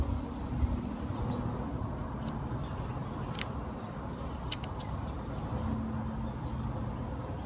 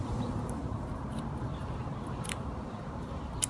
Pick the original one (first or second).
first